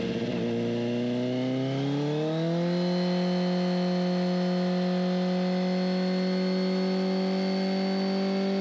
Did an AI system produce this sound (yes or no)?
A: no